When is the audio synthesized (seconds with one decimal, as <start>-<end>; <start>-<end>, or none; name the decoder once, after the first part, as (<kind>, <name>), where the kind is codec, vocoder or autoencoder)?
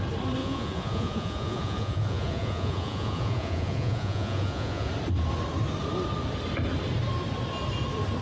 0.4-4.9 (vocoder, Vocos)